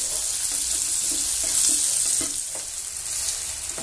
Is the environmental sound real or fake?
real